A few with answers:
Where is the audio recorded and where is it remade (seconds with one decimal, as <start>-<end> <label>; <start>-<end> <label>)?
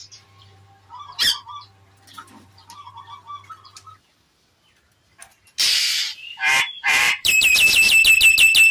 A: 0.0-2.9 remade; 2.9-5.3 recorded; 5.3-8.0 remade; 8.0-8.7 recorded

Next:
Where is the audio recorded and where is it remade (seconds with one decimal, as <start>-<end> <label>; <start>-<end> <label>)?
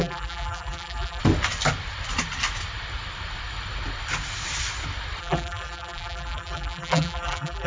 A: 0.0-1.2 remade; 1.2-5.2 recorded; 5.2-7.7 remade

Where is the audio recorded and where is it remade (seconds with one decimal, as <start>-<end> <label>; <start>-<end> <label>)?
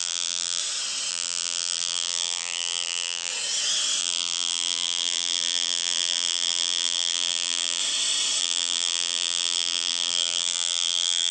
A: 0.0-0.6 remade; 0.6-1.1 recorded; 1.1-3.3 remade; 3.3-4.0 recorded; 4.0-7.8 remade; 7.8-8.4 recorded; 8.4-11.3 remade